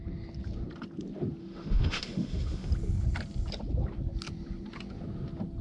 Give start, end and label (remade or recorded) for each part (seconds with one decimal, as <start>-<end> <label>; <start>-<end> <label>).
0.0-1.4 recorded; 1.4-2.7 remade; 2.7-5.6 recorded

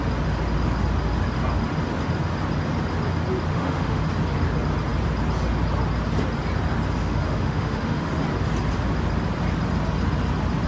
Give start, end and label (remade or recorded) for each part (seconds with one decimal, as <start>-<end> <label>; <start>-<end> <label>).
0.0-3.5 recorded; 3.5-4.0 remade; 4.0-7.0 recorded; 7.0-8.1 remade; 8.1-10.7 recorded

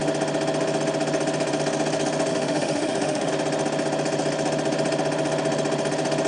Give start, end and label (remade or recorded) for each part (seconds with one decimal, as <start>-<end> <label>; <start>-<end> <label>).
0.0-2.3 recorded; 2.3-3.3 remade; 3.3-6.3 recorded

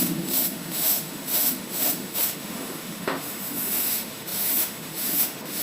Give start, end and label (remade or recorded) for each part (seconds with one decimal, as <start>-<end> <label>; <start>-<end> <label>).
0.0-5.6 remade

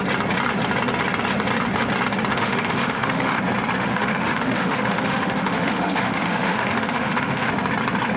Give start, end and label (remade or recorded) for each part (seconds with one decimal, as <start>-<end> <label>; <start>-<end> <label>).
0.0-2.3 recorded; 2.3-3.4 remade; 3.4-3.8 recorded; 3.8-7.5 remade; 7.5-8.2 recorded

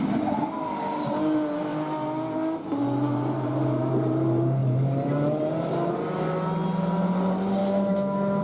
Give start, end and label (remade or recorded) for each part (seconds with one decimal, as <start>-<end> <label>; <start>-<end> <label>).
0.0-7.6 recorded; 7.6-8.4 remade

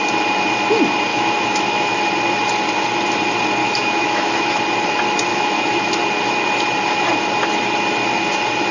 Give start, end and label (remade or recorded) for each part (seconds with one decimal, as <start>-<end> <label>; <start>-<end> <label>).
0.0-1.1 recorded; 1.1-2.0 remade; 2.0-3.6 recorded; 3.6-4.6 remade; 4.6-5.3 recorded; 5.3-5.9 remade; 5.9-8.7 recorded